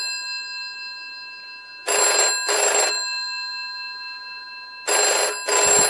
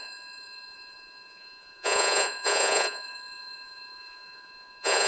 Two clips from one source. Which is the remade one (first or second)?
second